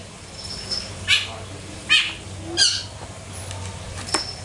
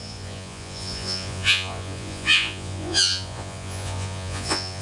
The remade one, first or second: second